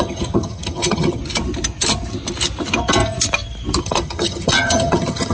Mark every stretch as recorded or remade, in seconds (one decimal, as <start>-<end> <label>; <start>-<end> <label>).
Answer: 0.0-1.2 remade; 1.2-3.8 recorded; 3.8-5.3 remade